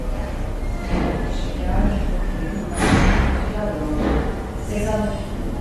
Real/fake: real